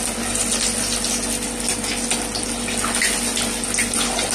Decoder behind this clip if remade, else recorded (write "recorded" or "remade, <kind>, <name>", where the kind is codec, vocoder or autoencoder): recorded